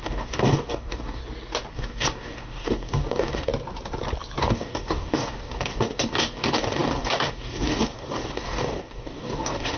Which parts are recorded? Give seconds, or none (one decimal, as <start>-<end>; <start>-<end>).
1.2-1.7; 3.5-4.4